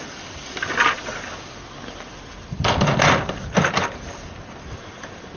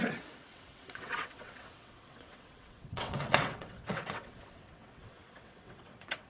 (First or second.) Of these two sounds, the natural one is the first